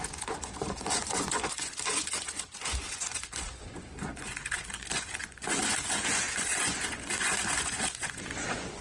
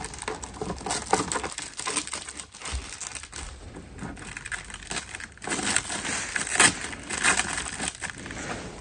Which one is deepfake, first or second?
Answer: first